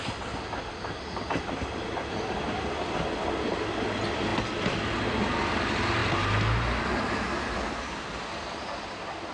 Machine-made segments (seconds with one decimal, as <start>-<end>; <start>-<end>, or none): none